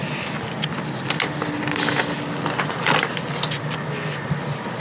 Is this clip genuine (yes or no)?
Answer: yes